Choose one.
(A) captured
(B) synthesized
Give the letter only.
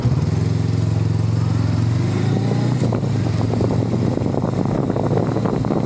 A